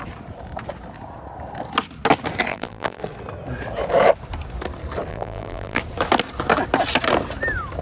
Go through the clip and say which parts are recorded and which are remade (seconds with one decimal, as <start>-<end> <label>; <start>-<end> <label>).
0.0-2.5 recorded; 2.5-3.0 remade; 3.0-5.1 recorded; 5.1-5.8 remade; 5.8-7.8 recorded